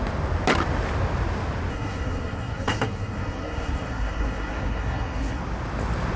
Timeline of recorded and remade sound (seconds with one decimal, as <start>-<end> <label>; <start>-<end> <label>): 0.0-1.7 recorded; 1.7-5.4 remade; 5.4-6.2 recorded